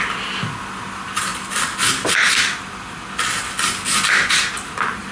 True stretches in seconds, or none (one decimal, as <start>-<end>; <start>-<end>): 0.0-5.1